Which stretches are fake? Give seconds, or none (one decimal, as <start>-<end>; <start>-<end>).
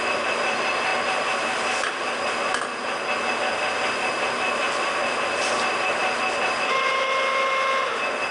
none